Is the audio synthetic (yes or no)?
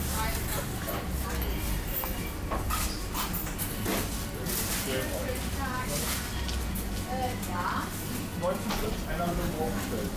no